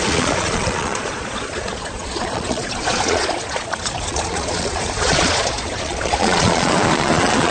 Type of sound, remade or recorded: remade